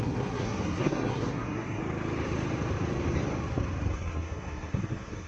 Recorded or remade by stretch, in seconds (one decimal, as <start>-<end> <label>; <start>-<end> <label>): 0.0-1.8 remade; 1.8-3.9 recorded; 3.9-5.3 remade